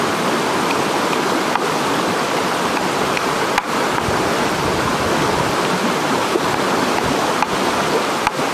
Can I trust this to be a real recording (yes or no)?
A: yes